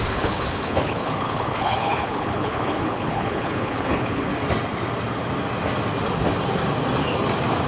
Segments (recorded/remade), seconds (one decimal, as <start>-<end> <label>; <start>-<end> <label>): 0.0-4.3 remade; 4.3-7.7 recorded